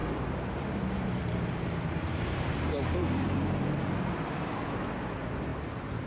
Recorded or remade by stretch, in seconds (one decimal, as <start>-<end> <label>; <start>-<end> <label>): 0.0-3.7 remade; 3.7-5.5 recorded; 5.5-6.1 remade